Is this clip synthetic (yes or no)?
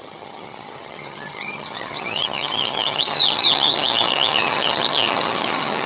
yes